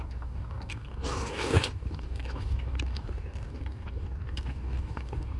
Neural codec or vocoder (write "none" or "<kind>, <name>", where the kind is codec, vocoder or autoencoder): codec, DAC